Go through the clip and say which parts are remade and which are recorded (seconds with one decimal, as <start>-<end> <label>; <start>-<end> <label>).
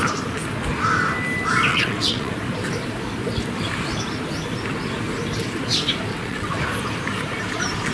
0.0-1.7 recorded; 1.7-2.3 remade; 2.3-6.1 recorded; 6.1-6.6 remade; 6.6-7.9 recorded